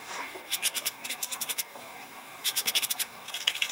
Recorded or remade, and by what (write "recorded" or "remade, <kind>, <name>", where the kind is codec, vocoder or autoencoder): remade, codec, DAC